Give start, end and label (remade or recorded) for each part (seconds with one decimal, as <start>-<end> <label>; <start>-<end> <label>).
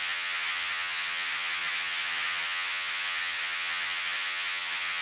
0.0-5.0 remade